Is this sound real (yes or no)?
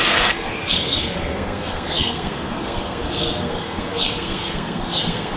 no